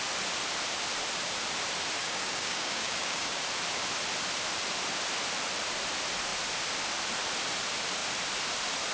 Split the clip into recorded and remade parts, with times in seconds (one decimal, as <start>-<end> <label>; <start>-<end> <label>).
0.0-2.0 recorded; 2.0-3.4 remade; 3.4-8.9 recorded